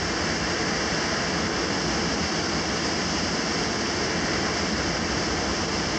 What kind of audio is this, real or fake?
real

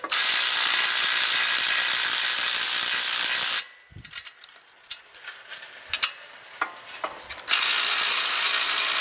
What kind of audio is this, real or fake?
real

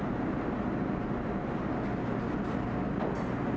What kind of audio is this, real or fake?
real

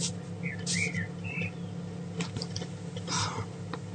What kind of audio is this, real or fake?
real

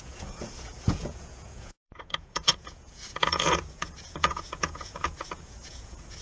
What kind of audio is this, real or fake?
fake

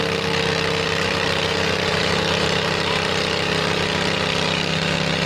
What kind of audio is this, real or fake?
real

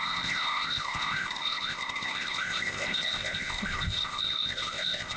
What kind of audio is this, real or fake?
fake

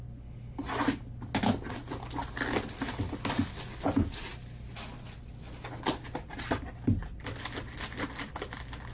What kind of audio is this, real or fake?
real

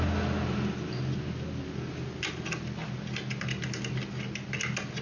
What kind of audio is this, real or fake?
real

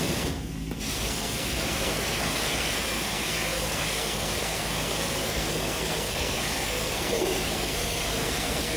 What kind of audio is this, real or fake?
fake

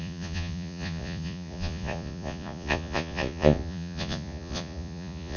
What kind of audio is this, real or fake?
fake